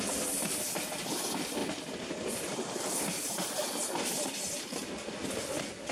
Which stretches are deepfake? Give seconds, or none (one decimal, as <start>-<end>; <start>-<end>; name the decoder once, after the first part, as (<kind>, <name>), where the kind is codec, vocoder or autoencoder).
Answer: 1.6-5.1 (vocoder, BigVGAN v2)